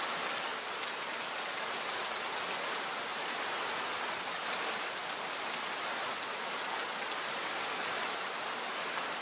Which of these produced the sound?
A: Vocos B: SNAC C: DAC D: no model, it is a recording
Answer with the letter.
D